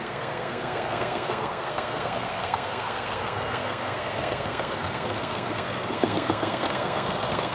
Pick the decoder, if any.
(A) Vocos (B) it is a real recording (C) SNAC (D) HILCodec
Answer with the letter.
C